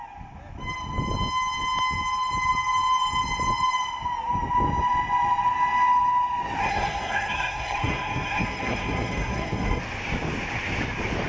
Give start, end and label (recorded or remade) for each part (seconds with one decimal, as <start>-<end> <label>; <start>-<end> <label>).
0.0-6.6 recorded; 6.6-9.8 remade; 9.8-11.3 recorded